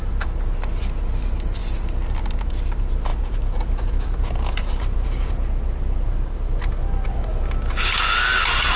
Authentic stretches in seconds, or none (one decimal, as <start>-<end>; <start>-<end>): 0.0-8.8